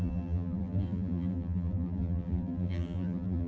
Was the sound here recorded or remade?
remade